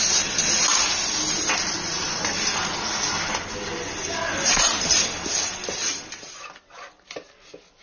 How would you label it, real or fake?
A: real